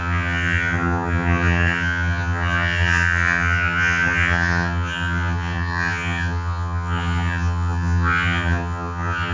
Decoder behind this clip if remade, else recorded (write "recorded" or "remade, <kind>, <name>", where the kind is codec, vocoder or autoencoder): remade, vocoder, HiFi-GAN